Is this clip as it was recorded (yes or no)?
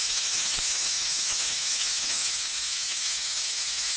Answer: no